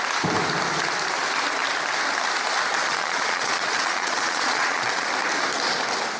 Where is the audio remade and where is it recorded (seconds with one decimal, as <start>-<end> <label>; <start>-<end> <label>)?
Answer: 0.0-2.8 recorded; 2.8-5.1 remade; 5.1-6.2 recorded